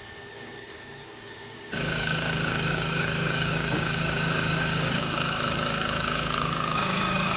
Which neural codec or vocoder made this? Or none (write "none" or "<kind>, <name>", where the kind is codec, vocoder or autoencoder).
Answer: codec, DAC